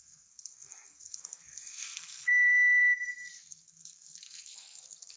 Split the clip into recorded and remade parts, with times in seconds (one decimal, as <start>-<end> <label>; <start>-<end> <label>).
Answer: 0.0-5.2 remade